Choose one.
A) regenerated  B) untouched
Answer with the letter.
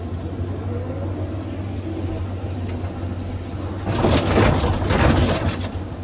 B